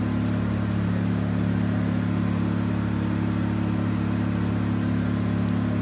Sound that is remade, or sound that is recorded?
recorded